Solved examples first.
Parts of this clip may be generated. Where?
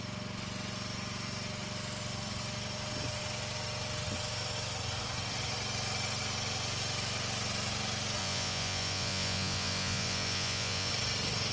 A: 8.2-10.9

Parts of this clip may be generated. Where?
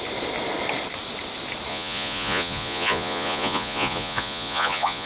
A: 1.7-5.1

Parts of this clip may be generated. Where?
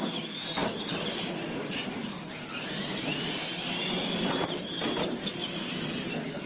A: none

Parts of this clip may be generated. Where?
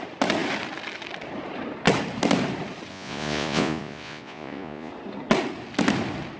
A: 2.9-4.9